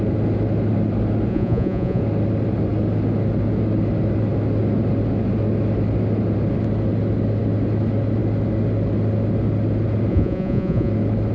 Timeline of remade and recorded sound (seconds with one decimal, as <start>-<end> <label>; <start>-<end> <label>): 0.0-1.3 recorded; 1.3-2.0 remade; 2.0-10.1 recorded; 10.1-10.9 remade; 10.9-11.3 recorded